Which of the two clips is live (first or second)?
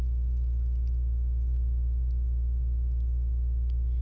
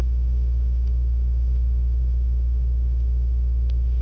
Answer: first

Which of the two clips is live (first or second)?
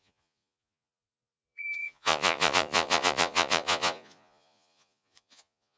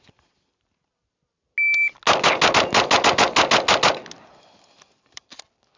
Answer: second